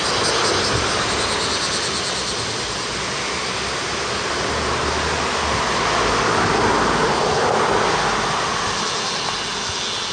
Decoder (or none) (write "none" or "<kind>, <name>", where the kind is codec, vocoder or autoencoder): none